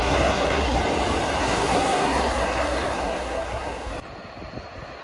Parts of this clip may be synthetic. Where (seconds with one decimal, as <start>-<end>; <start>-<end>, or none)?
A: 0.0-0.8; 1.4-3.9